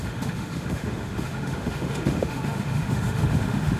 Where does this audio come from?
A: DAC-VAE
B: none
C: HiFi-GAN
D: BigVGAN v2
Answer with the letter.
A